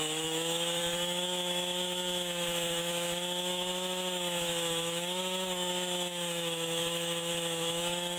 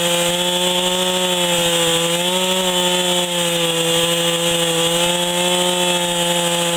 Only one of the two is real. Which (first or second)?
second